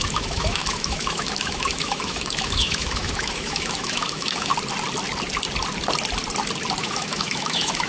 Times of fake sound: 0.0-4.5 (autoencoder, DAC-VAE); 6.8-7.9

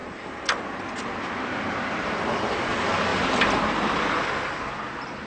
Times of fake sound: 0.0-2.2 (vocoder, BigVGAN v2)

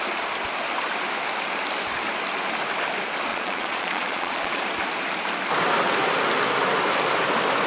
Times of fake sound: 3.3-4.6 (vocoder, Vocos)

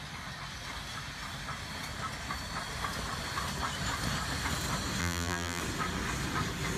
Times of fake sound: 5.0-5.6 (vocoder, BigVGAN v2)